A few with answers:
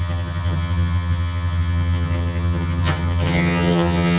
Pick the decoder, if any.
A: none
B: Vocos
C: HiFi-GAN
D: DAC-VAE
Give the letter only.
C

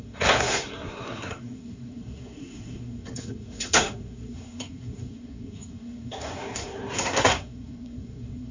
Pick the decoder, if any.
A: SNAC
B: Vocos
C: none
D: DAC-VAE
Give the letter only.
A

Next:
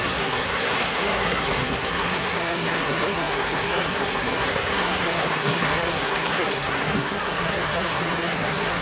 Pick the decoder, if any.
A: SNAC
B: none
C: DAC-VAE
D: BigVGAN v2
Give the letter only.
A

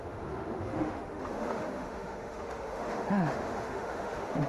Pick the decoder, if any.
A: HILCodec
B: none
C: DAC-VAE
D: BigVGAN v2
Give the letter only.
C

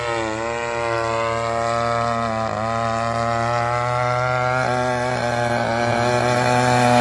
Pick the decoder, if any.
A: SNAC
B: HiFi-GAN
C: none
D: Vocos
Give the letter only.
C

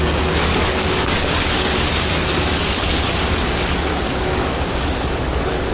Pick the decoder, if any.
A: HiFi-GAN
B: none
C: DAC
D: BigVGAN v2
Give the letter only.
C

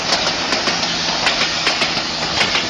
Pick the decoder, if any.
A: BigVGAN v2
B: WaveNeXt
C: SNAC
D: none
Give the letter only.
D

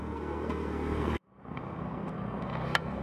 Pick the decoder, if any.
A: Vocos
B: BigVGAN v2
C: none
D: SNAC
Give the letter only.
D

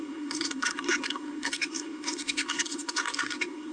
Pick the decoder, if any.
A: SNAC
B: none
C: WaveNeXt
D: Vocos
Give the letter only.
A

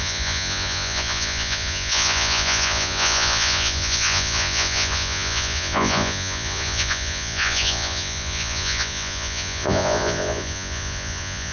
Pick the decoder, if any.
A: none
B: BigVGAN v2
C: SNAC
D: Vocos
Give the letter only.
D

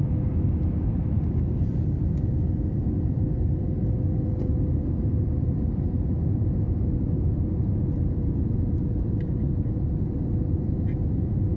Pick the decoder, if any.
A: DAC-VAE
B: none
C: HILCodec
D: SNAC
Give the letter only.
B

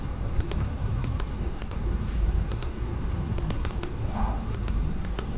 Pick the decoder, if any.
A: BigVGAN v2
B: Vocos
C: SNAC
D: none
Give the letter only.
C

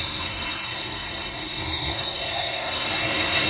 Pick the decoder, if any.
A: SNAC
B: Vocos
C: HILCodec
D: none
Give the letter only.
A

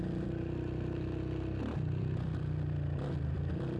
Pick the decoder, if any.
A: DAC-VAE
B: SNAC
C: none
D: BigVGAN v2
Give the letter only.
D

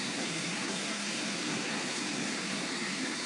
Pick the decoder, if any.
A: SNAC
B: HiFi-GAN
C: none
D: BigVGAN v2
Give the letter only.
A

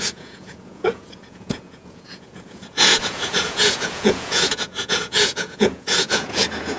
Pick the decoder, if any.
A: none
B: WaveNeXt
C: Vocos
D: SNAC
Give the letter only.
C